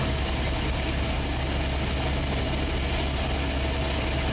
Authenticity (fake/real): real